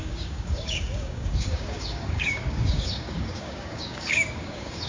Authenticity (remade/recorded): remade